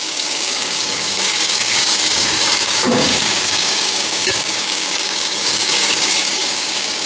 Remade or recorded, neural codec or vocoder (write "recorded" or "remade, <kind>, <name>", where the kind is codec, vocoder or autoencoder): remade, codec, DAC